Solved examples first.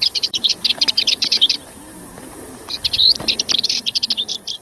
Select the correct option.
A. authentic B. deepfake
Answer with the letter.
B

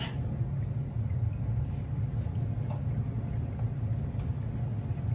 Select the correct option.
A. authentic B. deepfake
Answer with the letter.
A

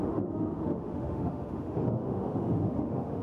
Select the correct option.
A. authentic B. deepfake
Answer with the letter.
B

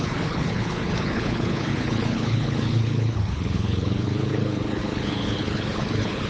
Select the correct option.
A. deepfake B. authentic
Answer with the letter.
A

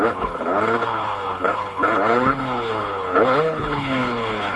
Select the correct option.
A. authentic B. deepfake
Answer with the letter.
B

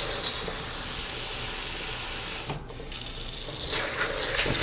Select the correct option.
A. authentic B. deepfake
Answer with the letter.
A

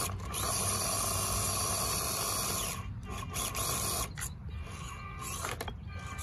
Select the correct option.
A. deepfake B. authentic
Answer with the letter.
B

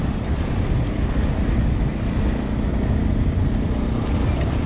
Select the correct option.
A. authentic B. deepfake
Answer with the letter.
A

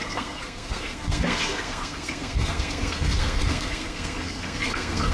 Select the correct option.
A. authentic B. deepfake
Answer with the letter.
B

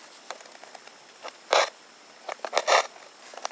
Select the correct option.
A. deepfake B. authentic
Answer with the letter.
B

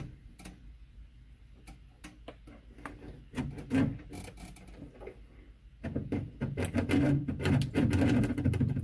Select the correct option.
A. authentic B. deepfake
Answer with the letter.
A